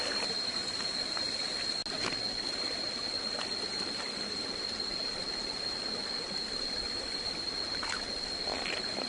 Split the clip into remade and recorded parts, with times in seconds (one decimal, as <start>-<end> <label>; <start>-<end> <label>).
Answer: 0.0-9.1 recorded